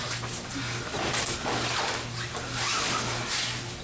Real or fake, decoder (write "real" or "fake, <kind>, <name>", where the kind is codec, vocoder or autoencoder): real